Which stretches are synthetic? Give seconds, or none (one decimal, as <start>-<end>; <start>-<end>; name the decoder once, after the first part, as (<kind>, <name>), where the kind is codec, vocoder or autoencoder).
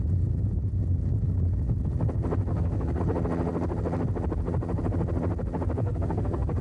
2.5-3.0 (codec, SNAC); 5.8-6.6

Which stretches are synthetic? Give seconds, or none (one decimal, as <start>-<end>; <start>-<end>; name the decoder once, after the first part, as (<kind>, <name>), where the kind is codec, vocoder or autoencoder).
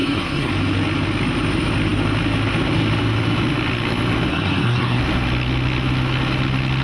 0.0-0.5 (codec, SNAC); 4.3-5.0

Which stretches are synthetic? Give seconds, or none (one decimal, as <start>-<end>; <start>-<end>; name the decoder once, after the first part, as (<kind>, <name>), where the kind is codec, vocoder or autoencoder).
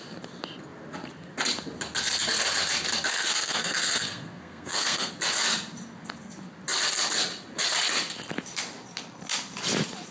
3.1-5.1 (codec, SNAC)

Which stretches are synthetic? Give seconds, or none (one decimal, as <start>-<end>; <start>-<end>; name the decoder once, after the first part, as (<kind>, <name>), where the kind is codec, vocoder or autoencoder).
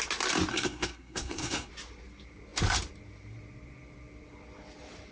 0.5-1.7 (codec, SNAC)